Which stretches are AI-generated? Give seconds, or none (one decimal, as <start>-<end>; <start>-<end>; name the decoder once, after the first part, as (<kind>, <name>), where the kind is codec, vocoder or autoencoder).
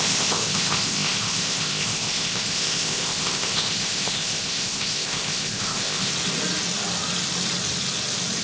0.0-6.1 (codec, ZipCodec)